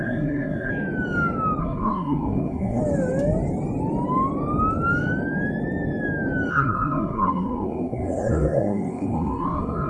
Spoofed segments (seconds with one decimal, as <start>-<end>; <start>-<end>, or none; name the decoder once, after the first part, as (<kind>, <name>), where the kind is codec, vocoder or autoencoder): 0.0-0.7 (codec, SNAC); 1.6-2.8; 6.5-9.9